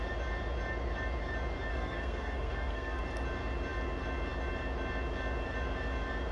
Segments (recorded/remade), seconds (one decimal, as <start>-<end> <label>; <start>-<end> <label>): 0.0-1.7 recorded; 1.7-3.0 remade; 3.0-6.3 recorded